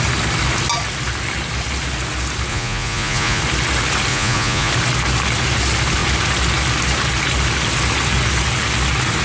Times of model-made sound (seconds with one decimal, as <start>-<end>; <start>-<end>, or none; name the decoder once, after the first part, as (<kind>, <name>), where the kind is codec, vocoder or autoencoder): 2.5-3.4 (vocoder, Vocos); 4.1-4.7